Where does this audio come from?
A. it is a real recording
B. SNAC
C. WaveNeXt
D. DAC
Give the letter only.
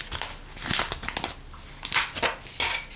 A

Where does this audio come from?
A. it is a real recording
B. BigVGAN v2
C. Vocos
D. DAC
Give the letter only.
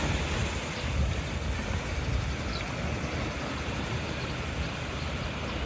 A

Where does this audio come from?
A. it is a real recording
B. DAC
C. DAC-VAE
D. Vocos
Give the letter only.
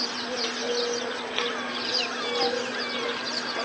A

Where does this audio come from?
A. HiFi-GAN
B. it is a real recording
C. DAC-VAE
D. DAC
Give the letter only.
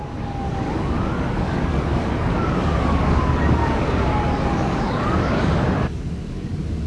D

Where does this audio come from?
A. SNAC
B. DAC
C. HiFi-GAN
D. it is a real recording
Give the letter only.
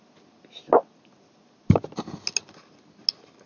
D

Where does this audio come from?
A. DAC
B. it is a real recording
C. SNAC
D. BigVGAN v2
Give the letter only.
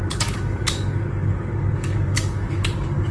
A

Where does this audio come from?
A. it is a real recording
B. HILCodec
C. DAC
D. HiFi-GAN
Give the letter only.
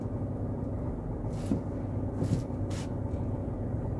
A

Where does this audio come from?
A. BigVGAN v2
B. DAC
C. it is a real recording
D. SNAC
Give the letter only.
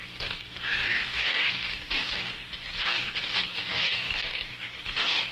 B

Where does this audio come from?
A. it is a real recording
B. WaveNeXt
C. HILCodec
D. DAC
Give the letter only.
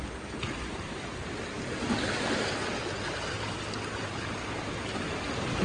A